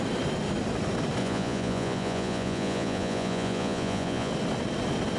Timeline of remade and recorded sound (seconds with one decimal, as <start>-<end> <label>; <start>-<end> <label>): 0.0-1.2 recorded; 1.2-4.3 remade; 4.3-5.2 recorded